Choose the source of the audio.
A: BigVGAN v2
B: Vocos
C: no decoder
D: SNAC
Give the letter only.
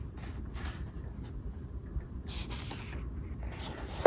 C